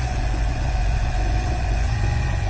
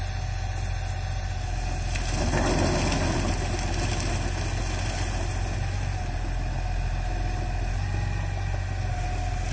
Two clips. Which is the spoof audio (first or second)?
first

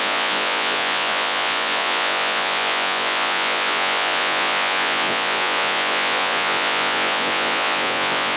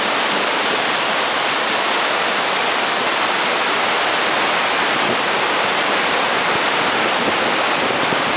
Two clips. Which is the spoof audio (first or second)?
first